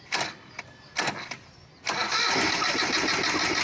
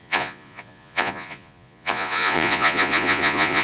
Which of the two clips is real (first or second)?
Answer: first